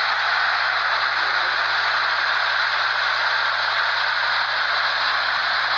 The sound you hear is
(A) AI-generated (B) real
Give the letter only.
B